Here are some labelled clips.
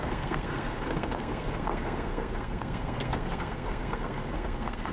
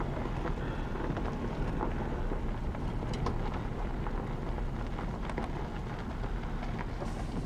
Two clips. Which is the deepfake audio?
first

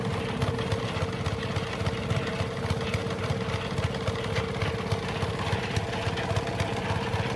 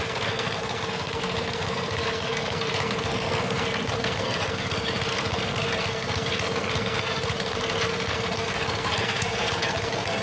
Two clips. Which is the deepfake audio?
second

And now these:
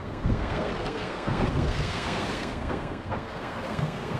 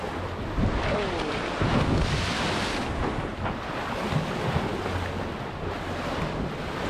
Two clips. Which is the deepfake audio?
first